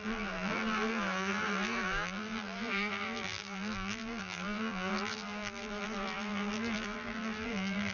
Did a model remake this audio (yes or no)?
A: yes